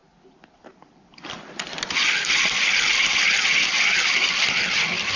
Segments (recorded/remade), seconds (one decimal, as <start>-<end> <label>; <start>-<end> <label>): 0.0-5.2 recorded